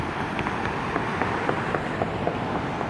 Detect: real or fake real